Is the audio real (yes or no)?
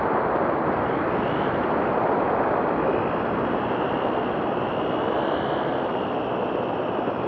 yes